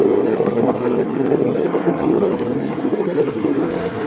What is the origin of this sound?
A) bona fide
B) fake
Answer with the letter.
B